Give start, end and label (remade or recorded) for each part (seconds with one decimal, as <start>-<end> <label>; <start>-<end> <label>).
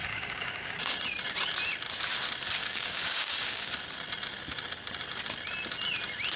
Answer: 0.0-0.8 remade; 0.8-2.6 recorded; 2.6-3.7 remade; 3.7-6.4 recorded